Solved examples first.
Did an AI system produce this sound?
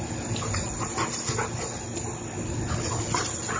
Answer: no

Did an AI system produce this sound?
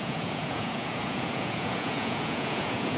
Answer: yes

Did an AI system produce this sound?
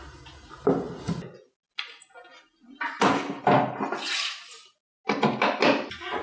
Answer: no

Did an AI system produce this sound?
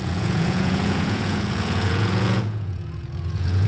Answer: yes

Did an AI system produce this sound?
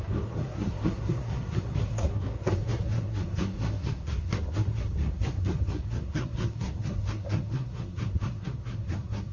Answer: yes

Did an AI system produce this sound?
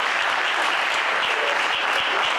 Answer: no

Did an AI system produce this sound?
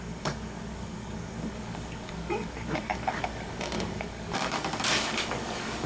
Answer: yes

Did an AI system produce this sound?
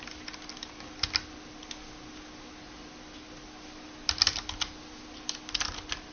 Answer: no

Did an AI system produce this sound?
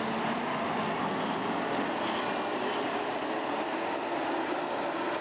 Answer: no